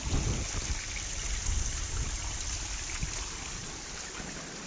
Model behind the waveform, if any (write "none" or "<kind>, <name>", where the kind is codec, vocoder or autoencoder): none